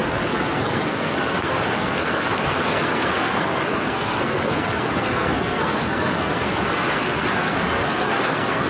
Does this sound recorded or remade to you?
remade